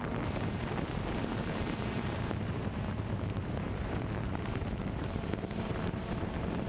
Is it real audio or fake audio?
fake